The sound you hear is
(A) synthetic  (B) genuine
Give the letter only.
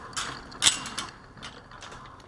B